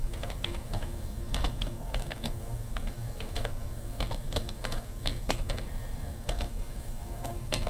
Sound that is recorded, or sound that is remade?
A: remade